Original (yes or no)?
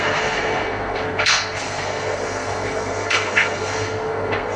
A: no